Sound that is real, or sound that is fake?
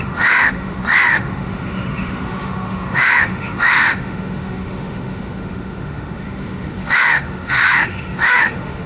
fake